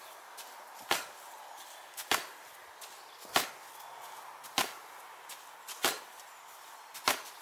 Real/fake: real